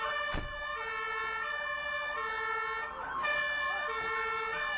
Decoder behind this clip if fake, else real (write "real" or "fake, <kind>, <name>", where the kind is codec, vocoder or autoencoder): real